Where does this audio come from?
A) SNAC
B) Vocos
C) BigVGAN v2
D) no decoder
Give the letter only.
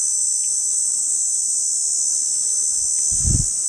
D